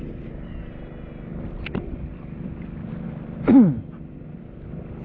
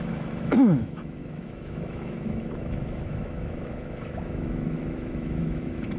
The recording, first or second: first